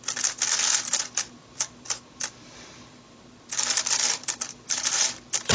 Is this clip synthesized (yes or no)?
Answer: yes